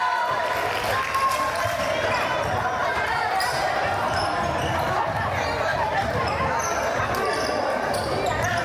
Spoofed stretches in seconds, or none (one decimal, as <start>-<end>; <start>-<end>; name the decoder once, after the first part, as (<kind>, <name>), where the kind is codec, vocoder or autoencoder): 2.8-3.7 (vocoder, BigVGAN v2); 5.7-6.4